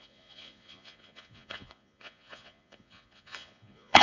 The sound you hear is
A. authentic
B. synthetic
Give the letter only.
B